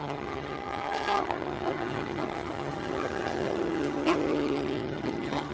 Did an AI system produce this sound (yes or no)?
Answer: yes